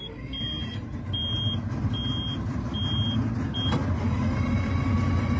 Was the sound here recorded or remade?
recorded